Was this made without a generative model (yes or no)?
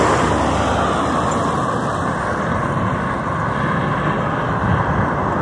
yes